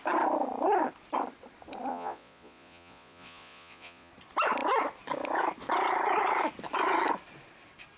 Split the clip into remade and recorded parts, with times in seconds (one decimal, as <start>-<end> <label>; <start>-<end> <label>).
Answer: 0.0-1.9 recorded; 1.9-4.1 remade; 4.1-8.0 recorded